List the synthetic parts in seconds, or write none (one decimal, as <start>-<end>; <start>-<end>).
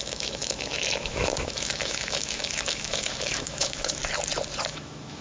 0.0-4.0; 4.7-5.2